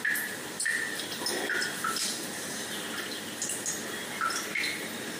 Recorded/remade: recorded